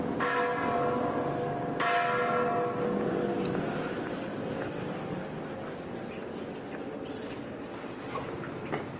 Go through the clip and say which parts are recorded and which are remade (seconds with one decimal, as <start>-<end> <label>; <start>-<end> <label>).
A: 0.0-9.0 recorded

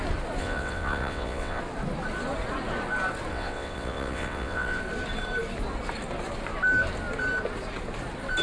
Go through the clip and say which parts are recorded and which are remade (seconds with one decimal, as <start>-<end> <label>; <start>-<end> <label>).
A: 0.0-0.4 recorded; 0.4-1.6 remade; 1.6-3.3 recorded; 3.3-4.8 remade; 4.8-8.4 recorded

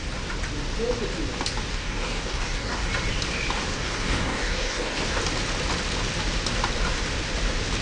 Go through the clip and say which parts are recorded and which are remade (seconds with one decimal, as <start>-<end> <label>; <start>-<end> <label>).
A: 0.0-1.7 recorded; 1.7-2.9 remade; 2.9-3.7 recorded; 3.7-5.2 remade; 5.2-7.8 recorded